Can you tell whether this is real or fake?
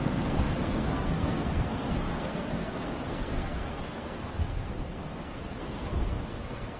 fake